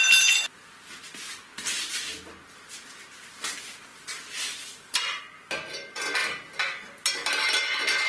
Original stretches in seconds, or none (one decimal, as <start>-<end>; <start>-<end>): 0.0-3.9; 5.2-8.1